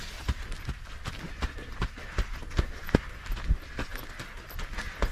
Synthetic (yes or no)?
no